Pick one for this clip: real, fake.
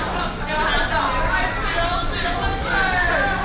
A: real